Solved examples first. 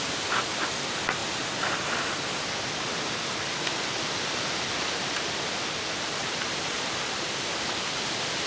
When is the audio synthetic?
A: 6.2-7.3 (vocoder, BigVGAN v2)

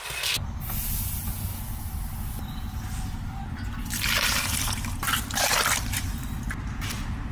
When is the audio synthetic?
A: none

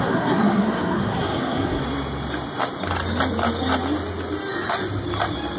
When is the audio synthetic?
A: 0.0-1.8 (codec, SNAC)

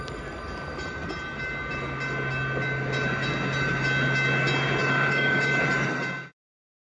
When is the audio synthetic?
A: 4.8-5.6 (autoencoder, DAC-VAE)

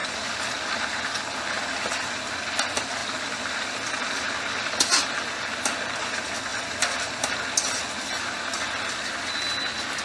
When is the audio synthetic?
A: 3.0-4.1 (vocoder, BigVGAN v2); 6.5-7.1